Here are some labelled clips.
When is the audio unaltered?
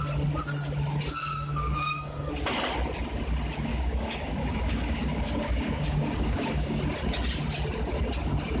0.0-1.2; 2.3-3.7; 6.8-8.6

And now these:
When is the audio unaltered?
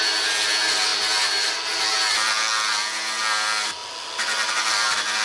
0.0-5.2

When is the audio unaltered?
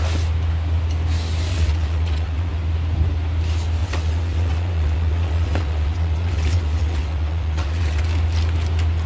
0.0-1.5; 2.5-3.8; 8.0-9.1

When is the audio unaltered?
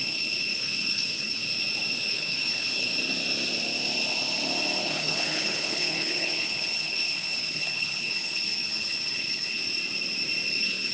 1.4-2.1; 2.9-4.8; 9.6-10.5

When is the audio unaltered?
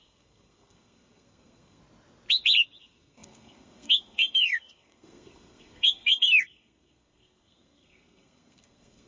1.8-2.8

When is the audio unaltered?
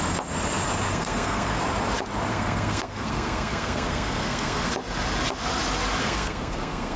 0.0-0.9; 1.6-2.3; 4.7-6.0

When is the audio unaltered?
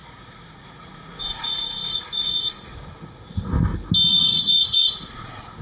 3.4-4.1